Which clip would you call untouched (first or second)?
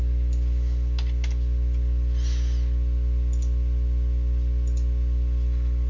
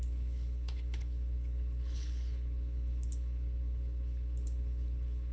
first